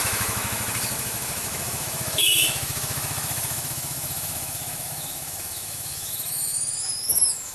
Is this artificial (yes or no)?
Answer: yes